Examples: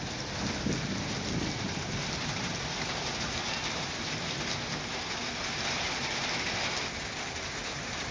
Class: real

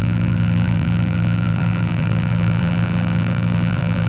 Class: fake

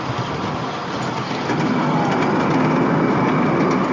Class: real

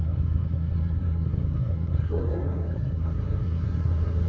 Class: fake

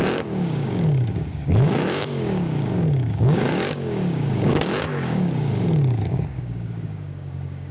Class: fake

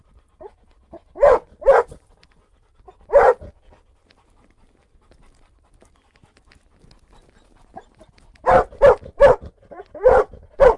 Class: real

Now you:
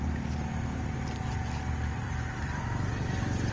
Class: real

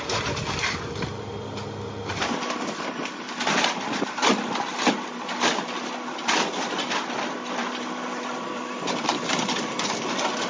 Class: real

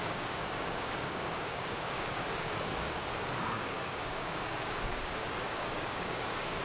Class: fake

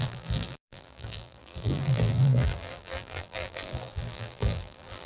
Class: fake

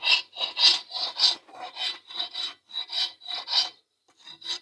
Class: real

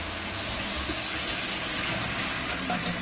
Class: real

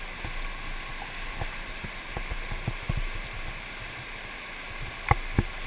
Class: real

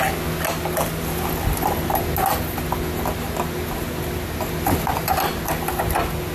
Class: real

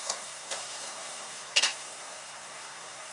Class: fake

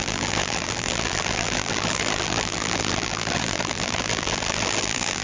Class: fake